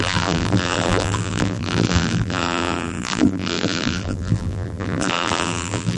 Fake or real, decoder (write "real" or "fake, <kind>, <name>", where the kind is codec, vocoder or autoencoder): fake, vocoder, BigVGAN v2